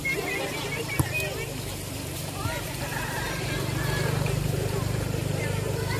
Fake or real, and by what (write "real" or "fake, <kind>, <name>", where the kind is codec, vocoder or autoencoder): fake, vocoder, BigVGAN v2